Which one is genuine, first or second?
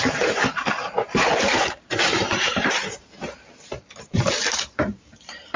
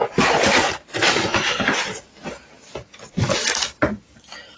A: second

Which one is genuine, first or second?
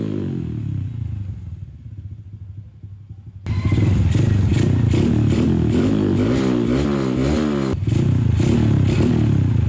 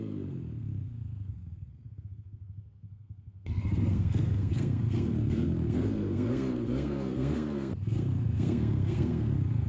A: first